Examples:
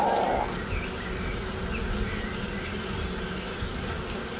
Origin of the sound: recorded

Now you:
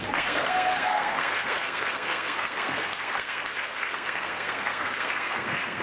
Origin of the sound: remade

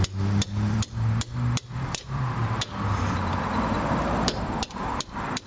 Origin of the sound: remade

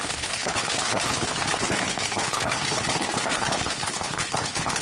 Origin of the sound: remade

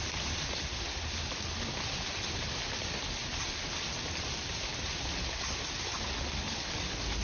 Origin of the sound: recorded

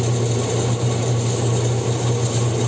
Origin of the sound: recorded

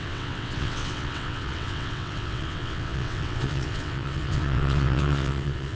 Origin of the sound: remade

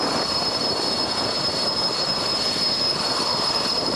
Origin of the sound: recorded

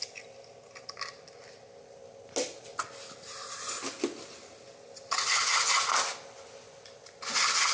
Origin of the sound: recorded